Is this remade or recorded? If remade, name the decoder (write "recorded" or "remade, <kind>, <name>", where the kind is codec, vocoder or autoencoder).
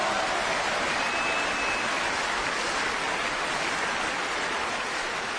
recorded